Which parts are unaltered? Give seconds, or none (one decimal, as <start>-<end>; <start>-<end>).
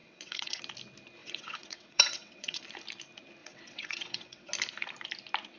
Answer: 0.6-1.2; 2.6-3.4; 4.5-5.6